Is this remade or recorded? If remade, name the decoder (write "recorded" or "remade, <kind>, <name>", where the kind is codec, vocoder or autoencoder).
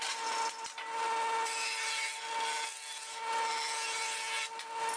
recorded